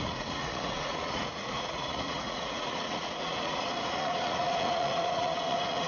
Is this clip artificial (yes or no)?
yes